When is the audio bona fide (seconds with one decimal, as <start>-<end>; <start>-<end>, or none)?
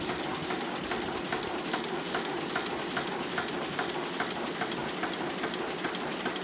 0.0-6.4